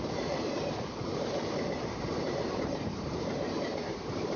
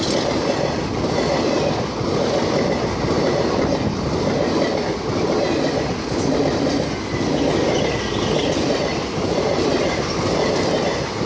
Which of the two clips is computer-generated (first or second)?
first